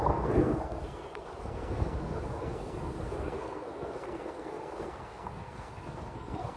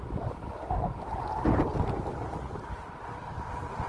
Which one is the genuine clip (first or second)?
second